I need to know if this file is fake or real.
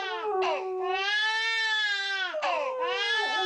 real